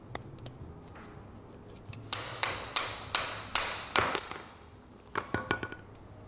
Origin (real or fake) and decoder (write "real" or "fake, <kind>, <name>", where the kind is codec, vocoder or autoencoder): real